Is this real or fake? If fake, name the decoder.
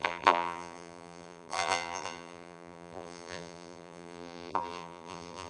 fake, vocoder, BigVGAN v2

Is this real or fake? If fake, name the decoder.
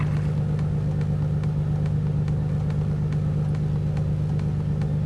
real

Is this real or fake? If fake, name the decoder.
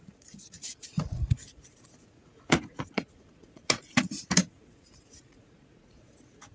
fake, vocoder, Vocos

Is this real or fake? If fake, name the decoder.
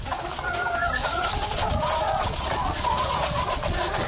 fake, vocoder, Vocos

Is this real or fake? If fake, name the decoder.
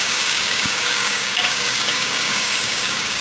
fake, codec, DAC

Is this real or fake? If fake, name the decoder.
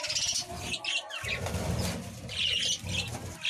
real